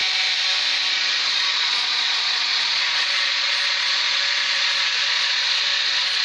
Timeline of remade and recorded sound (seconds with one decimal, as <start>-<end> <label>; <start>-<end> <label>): 0.0-0.9 recorded; 0.9-6.2 remade